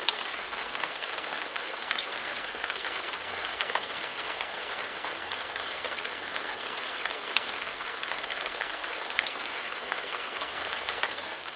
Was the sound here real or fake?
fake